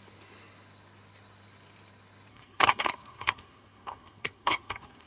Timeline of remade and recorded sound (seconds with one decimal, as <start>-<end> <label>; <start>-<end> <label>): 0.0-2.3 recorded; 2.3-5.1 remade

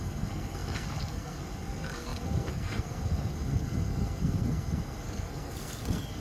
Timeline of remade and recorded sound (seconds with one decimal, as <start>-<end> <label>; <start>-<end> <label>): 0.0-6.2 remade

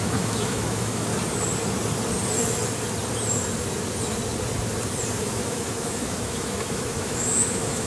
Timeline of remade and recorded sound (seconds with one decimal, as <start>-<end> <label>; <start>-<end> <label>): 0.0-1.1 remade; 1.1-5.2 recorded; 5.2-7.9 remade